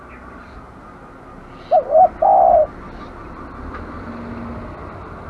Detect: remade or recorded recorded